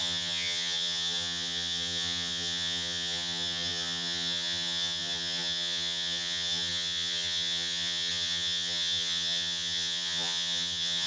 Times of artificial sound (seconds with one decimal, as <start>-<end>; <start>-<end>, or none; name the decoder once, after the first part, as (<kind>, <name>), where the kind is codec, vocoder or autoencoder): 0.0-11.1 (vocoder, HiFi-GAN)